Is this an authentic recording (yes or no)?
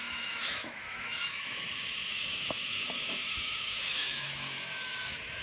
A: no